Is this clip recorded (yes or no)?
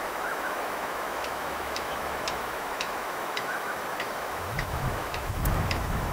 no